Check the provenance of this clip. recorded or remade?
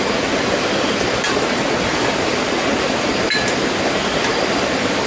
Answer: recorded